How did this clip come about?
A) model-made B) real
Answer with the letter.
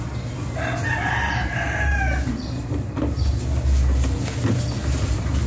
B